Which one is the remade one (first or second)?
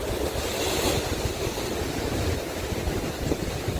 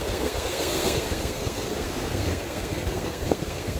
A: second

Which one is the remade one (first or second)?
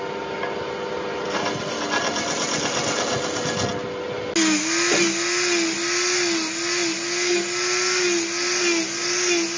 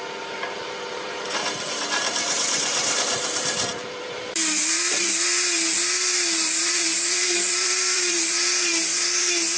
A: second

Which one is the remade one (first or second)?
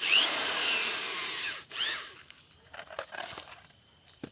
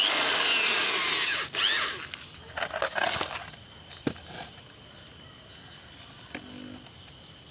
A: first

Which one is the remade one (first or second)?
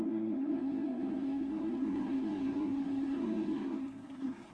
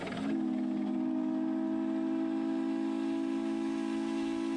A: first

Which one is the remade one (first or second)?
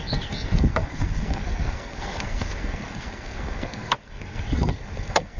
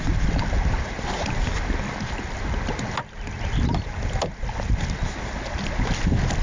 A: first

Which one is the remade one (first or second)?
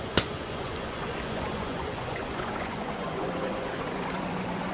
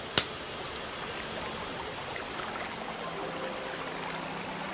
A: first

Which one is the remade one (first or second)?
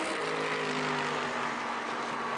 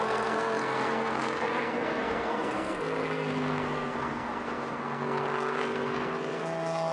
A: second